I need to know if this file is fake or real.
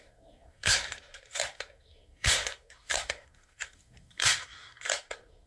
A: fake